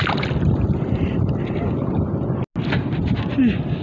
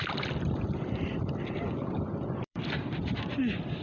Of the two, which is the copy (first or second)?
second